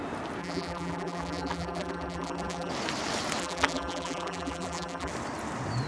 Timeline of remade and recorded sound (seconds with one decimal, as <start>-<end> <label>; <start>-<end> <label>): 0.0-0.4 recorded; 0.4-2.7 remade; 2.7-3.4 recorded; 3.4-5.1 remade; 5.1-5.9 recorded